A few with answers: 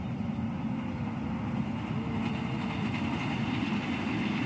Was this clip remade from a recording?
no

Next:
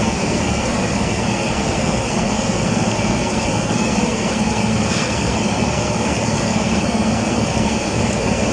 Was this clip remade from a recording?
yes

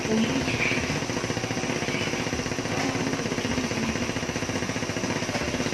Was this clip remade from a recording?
no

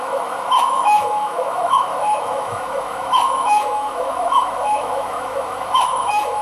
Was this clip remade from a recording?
yes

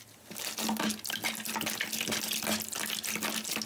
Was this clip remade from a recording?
no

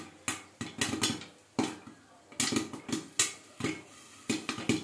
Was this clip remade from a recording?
no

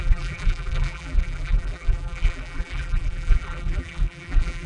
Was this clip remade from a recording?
yes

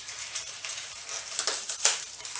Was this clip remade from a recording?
yes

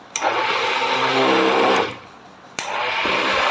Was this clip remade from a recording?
no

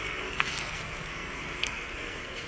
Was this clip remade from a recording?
yes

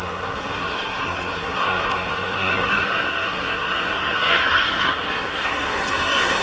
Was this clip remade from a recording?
yes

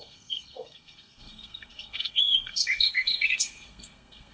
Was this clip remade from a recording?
yes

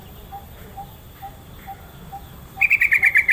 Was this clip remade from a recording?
no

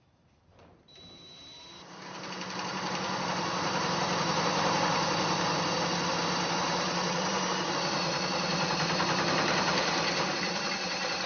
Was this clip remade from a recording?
yes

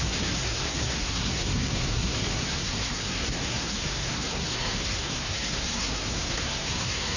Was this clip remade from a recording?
yes